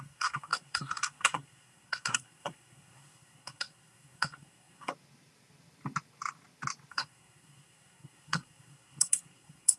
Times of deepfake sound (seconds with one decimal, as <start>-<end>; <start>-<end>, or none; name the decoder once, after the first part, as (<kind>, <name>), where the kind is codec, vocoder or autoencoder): 0.0-4.9 (codec, SNAC); 6.9-9.8